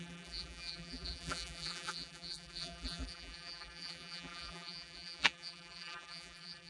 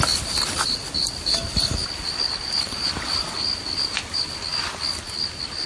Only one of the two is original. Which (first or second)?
second